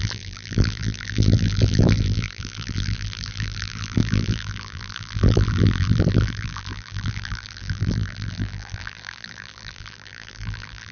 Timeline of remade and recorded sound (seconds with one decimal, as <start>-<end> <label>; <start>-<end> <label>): 0.0-10.9 remade